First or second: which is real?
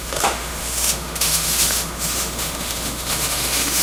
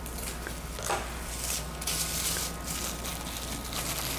second